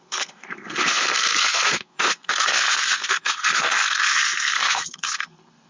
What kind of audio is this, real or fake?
fake